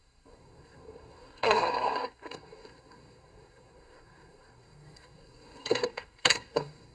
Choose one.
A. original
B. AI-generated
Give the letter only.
B